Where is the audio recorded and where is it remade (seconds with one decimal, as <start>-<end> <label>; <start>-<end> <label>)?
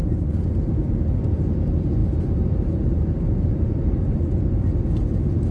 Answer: 0.0-0.7 remade; 0.7-2.0 recorded; 2.0-4.2 remade; 4.2-5.5 recorded